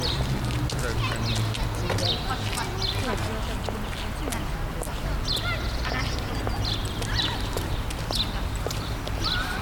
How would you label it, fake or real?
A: real